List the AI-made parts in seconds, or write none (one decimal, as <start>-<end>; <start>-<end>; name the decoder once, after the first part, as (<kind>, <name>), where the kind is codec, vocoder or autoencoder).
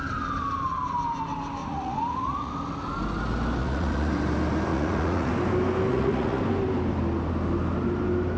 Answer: 1.6-2.5 (vocoder, Vocos); 3.6-4.1; 4.7-5.3; 5.9-6.4